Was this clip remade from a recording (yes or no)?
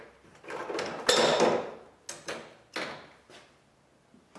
no